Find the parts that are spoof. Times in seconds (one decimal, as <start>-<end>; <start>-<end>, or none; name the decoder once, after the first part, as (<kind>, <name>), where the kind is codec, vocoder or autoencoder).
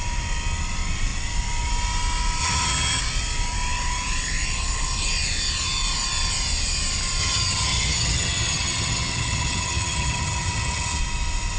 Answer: 2.4-3.0 (vocoder, HiFi-GAN); 7.2-11.0